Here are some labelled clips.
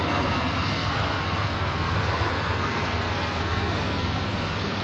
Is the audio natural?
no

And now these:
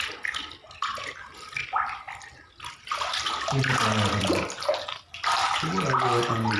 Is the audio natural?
yes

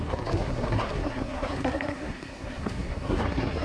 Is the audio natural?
no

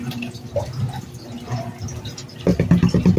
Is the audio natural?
yes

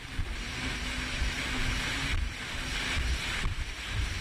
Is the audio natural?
yes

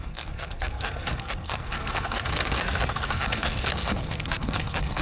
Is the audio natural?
no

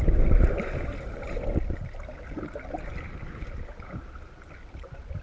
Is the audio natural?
yes